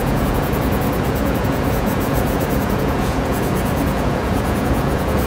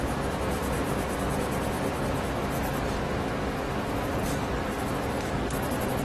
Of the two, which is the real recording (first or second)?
second